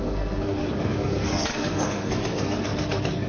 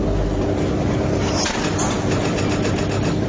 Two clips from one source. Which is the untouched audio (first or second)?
second